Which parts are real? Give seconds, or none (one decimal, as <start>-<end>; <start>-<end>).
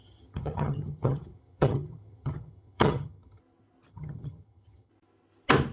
3.4-3.9; 4.9-5.7